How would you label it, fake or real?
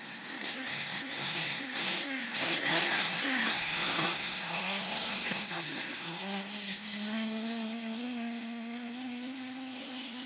fake